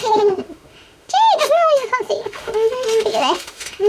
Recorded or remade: remade